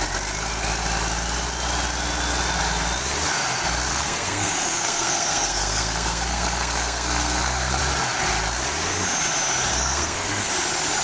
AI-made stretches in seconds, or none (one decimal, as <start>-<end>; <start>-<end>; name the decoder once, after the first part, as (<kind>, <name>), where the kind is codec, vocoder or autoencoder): 3.9-7.8 (codec, SNAC); 9.7-10.5